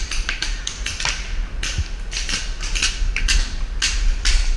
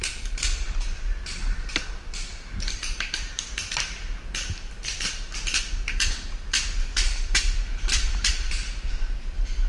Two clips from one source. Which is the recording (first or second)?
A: first